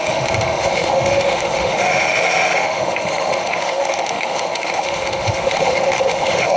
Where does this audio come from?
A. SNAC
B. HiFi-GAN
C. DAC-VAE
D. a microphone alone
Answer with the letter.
C